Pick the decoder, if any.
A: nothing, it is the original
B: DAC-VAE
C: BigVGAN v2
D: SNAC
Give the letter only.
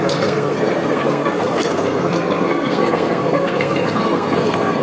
D